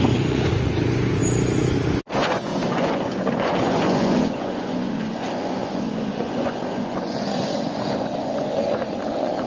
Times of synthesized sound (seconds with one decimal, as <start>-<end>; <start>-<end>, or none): 0.0-1.2; 2.1-9.5